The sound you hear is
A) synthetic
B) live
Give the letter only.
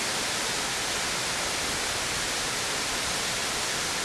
B